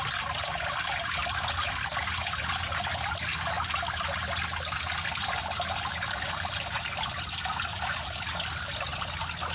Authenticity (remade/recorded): recorded